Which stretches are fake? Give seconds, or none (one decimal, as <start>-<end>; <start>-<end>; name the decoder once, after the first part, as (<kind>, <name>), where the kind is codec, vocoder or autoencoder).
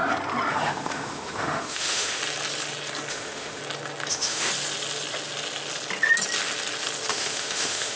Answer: 0.5-2.2 (autoencoder, DAC-VAE); 3.1-3.6; 4.1-4.5; 7.1-8.0